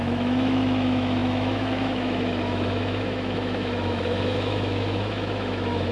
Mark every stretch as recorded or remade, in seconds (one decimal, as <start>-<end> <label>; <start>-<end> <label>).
0.0-5.9 remade